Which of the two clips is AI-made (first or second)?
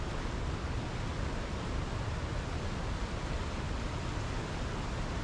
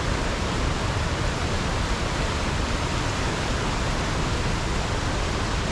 second